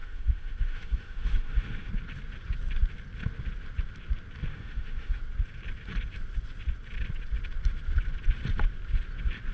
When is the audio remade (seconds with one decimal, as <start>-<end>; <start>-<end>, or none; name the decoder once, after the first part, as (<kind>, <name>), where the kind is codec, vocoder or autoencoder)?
0.0-1.9 (autoencoder, DAC-VAE); 4.5-5.2